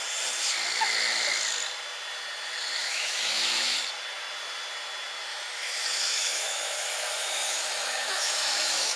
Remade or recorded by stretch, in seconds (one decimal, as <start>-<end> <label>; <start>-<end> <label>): 0.0-2.8 recorded; 2.8-3.8 remade; 3.8-5.3 recorded; 5.3-9.0 remade